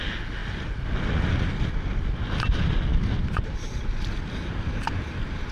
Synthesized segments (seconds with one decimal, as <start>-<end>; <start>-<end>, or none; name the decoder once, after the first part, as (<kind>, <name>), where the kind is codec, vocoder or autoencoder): none